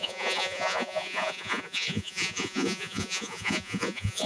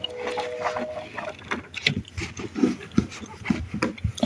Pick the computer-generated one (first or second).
first